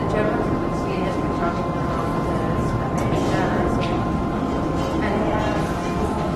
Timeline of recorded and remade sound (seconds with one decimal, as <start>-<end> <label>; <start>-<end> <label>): 0.0-0.7 remade; 0.7-6.4 recorded